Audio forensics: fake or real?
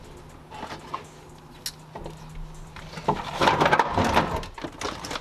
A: real